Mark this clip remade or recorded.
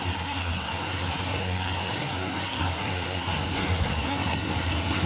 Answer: remade